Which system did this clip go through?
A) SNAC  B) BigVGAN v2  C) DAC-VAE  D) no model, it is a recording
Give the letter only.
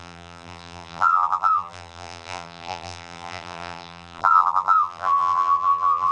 B